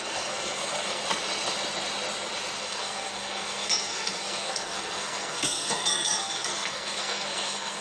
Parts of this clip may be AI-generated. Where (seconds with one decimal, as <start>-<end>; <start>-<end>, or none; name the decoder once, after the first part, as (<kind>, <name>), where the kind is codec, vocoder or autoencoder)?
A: 0.0-1.0 (codec, SNAC); 2.6-7.8